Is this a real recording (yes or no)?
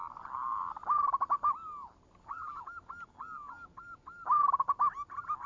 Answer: yes